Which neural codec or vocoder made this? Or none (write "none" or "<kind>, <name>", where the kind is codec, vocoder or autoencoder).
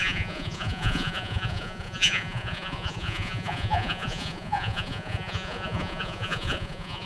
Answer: vocoder, Vocos